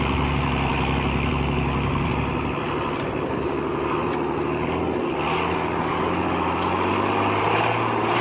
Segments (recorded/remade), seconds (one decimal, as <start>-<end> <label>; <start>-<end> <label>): 0.0-8.2 recorded